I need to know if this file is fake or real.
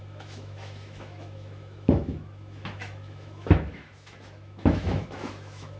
fake